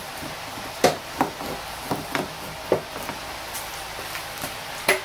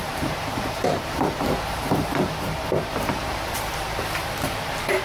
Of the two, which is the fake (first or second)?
second